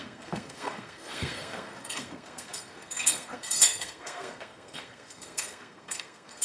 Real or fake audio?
fake